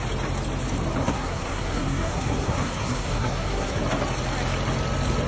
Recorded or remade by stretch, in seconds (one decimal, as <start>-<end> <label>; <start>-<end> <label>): 0.0-1.0 recorded; 1.0-3.8 remade; 3.8-5.3 recorded